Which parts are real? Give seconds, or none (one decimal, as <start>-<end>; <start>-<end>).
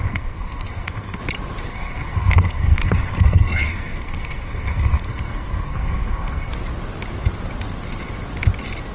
1.2-1.7; 6.5-8.9